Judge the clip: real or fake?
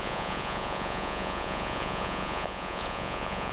fake